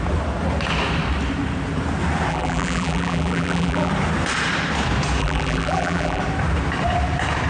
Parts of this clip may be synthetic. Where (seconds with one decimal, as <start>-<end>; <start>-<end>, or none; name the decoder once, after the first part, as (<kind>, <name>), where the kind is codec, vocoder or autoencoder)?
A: 2.3-3.9 (vocoder, BigVGAN v2); 5.2-6.2